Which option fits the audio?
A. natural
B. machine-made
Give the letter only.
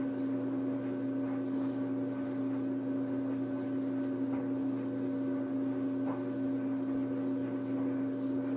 A